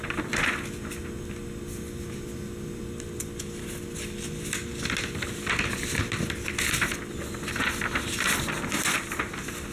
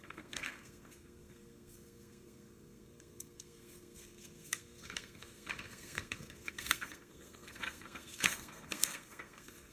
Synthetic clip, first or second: second